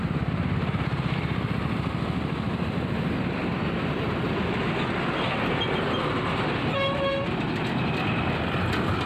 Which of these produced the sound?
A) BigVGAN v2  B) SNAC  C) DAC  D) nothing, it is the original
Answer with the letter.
D